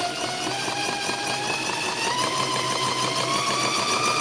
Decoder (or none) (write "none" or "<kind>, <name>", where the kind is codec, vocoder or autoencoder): none